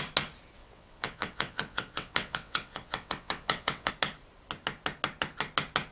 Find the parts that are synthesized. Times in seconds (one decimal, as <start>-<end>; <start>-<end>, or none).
0.6-3.9